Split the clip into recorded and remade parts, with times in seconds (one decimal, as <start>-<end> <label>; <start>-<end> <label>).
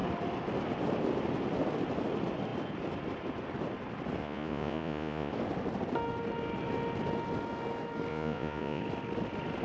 0.0-4.2 recorded; 4.2-5.3 remade; 5.3-8.1 recorded; 8.1-8.8 remade; 8.8-9.6 recorded